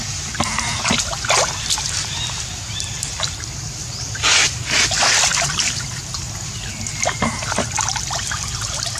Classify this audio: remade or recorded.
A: recorded